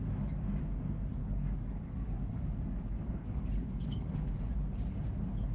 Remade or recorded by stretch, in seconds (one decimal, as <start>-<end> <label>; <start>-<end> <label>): 0.0-1.2 recorded; 1.2-4.4 remade; 4.4-5.5 recorded